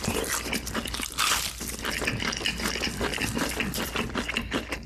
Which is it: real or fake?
real